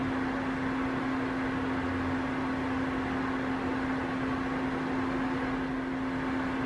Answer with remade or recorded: recorded